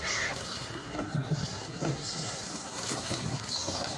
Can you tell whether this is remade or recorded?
remade